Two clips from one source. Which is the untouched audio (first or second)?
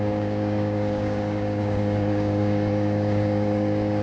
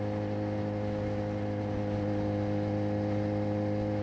second